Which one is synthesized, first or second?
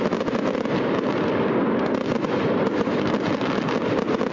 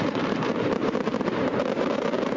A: second